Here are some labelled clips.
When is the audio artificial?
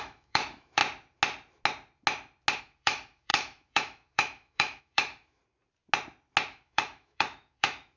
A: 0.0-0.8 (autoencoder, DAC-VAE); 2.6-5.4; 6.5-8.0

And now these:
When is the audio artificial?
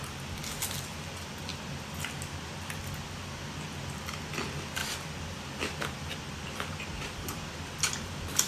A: none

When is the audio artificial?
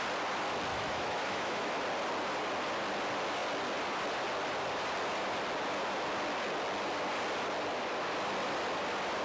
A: 0.7-1.8 (autoencoder, DAC-VAE)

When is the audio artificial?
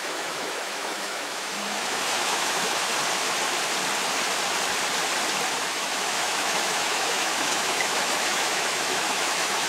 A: 0.0-2.9 (autoencoder, DAC-VAE); 5.6-9.7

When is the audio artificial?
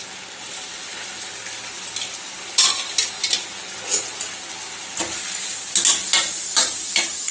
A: none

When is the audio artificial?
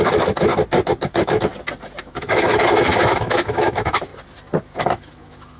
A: 0.0-0.5 (autoencoder, DAC-VAE); 1.1-1.5; 2.0-4.1; 4.8-5.6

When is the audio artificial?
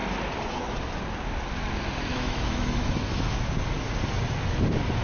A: 2.1-3.3 (autoencoder, DAC-VAE)